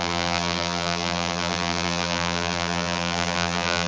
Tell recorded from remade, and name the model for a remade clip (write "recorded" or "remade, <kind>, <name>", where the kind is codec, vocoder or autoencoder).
remade, vocoder, BigVGAN v2